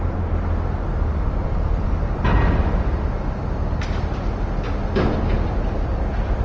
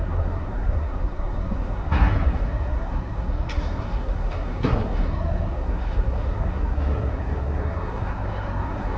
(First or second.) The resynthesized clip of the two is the second